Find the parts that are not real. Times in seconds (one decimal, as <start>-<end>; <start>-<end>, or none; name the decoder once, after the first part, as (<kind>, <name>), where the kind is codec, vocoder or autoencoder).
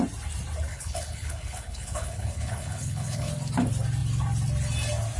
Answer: 0.7-3.3 (codec, HILCodec)